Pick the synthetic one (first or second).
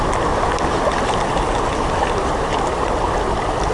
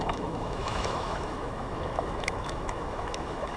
second